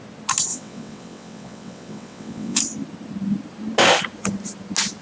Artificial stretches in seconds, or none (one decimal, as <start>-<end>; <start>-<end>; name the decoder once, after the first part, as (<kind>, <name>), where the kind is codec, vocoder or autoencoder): 0.5-2.6 (vocoder, WaveNeXt)